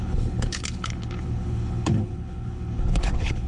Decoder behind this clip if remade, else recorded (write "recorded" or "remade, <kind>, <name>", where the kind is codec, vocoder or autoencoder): remade, codec, HILCodec